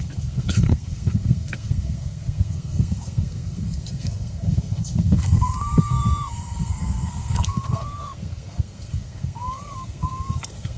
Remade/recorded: remade